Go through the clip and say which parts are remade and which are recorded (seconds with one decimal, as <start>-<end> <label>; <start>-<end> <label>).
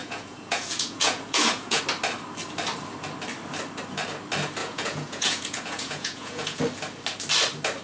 0.0-1.8 remade; 1.8-4.6 recorded; 4.6-6.6 remade; 6.6-7.8 recorded